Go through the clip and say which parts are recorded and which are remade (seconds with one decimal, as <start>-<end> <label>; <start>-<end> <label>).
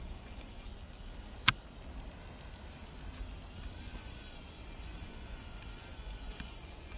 0.0-0.7 remade; 0.7-3.8 recorded; 3.8-7.0 remade